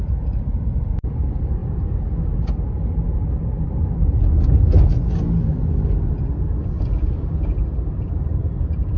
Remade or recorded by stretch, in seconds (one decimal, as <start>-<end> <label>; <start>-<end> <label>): 0.0-1.1 recorded; 1.1-1.6 remade; 1.6-6.8 recorded; 6.8-9.0 remade